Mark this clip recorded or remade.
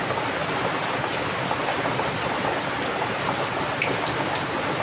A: recorded